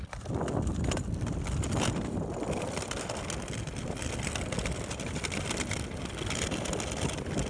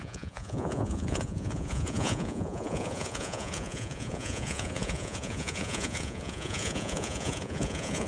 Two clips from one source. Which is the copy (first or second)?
second